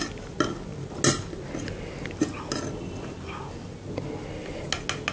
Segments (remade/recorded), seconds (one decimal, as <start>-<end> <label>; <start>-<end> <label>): 0.0-5.1 recorded